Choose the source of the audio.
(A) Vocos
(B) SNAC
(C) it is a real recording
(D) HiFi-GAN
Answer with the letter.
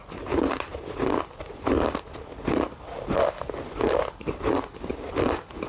C